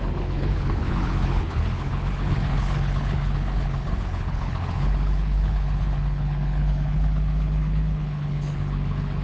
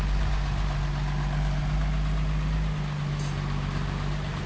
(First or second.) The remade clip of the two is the first